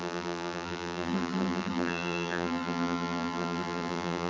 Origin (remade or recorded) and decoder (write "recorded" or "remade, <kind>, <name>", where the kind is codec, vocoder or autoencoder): remade, vocoder, BigVGAN v2